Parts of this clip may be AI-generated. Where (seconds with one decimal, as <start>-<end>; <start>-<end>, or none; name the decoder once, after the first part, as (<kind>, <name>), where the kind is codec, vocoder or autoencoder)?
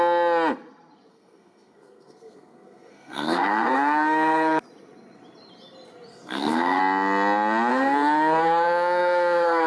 1.1-4.6 (codec, SNAC); 6.1-6.8; 7.7-9.7